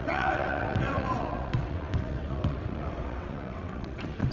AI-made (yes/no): yes